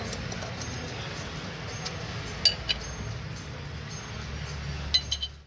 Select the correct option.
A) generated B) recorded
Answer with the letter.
B